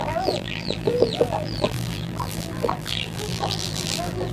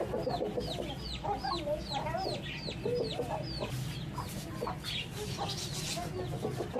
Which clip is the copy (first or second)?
first